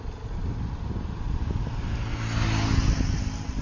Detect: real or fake real